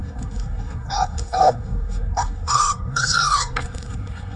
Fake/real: fake